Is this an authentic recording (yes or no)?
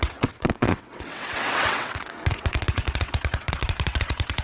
no